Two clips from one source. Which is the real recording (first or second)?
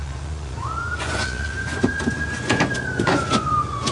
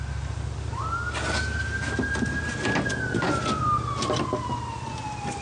second